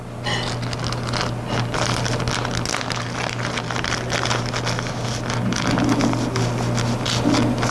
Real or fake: real